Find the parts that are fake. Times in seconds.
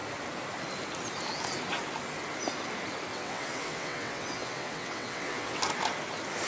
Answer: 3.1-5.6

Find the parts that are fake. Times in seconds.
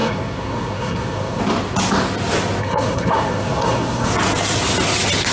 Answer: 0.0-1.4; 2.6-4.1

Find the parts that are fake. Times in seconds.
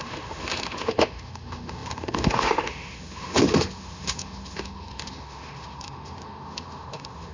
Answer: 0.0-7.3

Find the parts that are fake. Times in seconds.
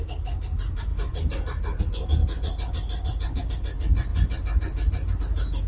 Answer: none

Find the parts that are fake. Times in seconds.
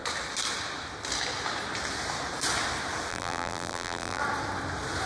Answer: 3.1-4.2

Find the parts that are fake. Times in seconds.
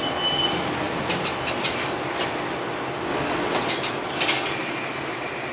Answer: 3.1-3.7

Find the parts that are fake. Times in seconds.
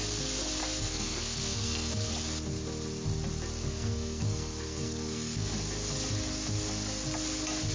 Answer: 0.6-2.1; 3.6-5.5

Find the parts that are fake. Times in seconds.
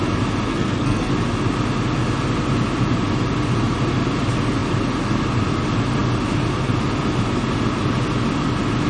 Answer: 0.5-1.1